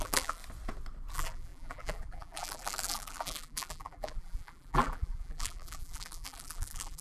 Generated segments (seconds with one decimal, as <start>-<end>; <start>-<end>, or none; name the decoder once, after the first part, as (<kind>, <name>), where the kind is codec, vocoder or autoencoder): 0.0-0.4 (vocoder, BigVGAN v2); 1.1-7.0